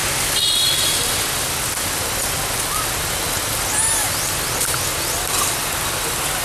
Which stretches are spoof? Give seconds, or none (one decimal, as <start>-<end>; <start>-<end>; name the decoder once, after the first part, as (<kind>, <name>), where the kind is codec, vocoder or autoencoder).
none